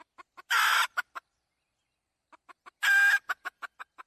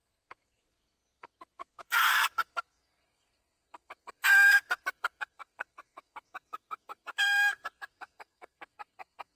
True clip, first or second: first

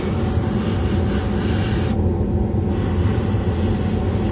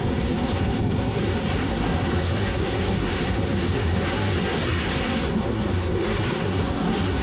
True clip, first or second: first